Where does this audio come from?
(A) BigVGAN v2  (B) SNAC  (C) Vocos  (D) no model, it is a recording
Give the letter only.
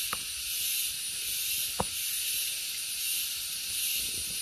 D